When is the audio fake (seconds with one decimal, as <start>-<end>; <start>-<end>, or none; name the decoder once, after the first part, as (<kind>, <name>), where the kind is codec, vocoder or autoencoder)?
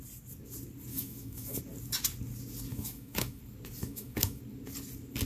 0.9-1.6 (autoencoder, DAC-VAE); 2.7-3.4; 3.8-4.4